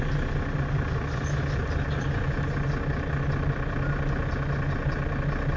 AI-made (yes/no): no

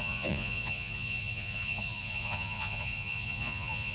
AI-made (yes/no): yes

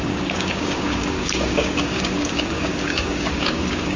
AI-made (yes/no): yes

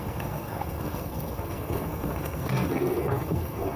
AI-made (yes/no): yes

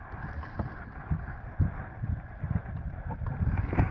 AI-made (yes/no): no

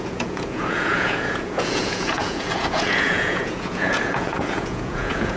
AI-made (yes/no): yes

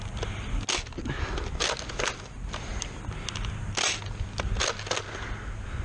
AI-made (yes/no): no